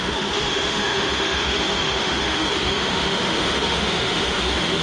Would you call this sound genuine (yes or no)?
no